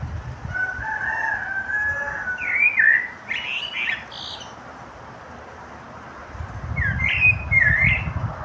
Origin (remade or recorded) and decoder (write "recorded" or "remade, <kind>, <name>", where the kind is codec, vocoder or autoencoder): recorded